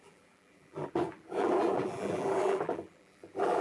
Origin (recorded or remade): remade